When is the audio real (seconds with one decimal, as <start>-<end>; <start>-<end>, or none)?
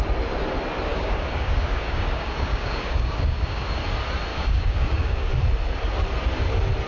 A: 0.0-0.9; 3.8-4.3; 5.3-6.9